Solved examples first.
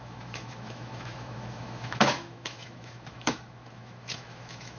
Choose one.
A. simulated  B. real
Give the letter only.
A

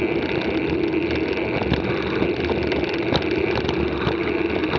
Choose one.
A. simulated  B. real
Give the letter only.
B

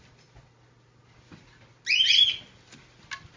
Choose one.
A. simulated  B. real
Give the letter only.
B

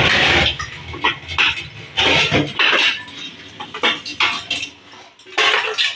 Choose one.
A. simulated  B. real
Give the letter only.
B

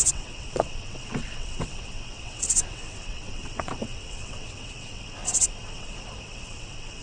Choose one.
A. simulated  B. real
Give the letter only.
A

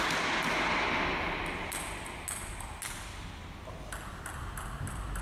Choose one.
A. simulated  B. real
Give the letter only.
B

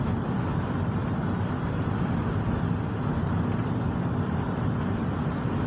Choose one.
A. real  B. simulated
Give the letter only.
B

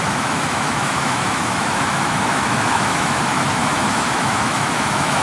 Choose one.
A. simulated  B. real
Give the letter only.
A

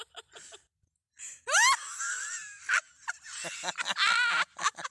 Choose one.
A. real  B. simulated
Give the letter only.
A